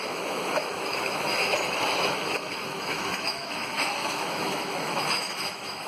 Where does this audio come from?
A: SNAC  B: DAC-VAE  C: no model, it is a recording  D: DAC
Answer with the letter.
B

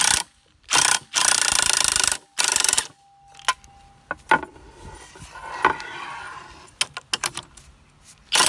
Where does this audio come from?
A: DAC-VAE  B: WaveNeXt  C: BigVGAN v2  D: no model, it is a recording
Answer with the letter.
D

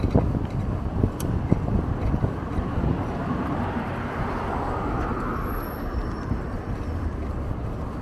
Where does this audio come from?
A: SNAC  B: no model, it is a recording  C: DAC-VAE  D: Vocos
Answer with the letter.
B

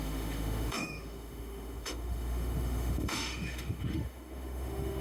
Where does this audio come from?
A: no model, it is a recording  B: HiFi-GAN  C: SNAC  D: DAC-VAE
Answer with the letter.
D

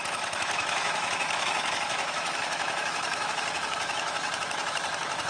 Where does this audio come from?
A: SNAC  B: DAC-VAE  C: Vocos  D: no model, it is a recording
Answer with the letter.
B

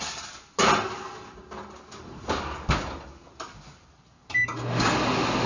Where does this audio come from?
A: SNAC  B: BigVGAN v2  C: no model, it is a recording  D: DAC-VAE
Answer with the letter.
C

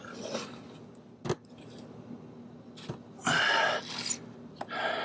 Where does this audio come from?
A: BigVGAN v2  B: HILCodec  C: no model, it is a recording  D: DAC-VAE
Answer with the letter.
C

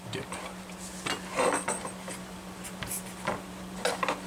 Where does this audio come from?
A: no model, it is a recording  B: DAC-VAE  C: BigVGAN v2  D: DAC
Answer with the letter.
A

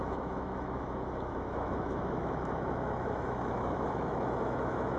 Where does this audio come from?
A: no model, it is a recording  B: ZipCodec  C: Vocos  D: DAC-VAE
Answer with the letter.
D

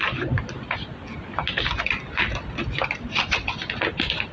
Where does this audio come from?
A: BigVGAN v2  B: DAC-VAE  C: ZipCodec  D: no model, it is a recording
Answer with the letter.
D